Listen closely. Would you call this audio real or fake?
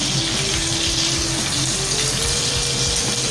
real